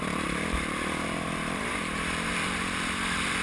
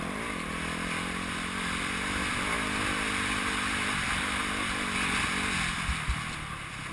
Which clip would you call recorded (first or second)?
second